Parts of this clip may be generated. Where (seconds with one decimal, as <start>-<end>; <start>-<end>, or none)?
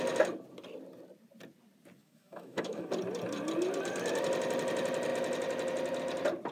2.0-2.9